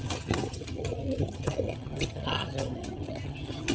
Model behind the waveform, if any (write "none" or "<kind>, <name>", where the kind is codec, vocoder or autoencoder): vocoder, HiFi-GAN